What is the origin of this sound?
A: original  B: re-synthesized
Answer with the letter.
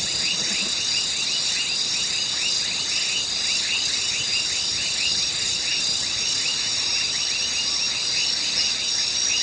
A